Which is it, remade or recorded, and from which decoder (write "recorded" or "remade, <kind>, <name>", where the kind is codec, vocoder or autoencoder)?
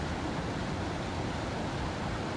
recorded